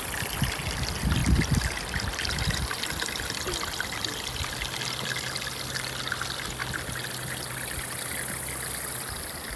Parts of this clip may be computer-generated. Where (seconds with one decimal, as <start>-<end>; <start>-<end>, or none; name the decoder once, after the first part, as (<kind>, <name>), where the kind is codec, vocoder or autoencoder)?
none